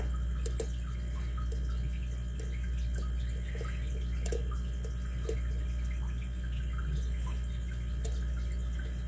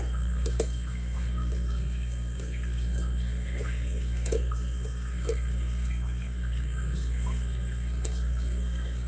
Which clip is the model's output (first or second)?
second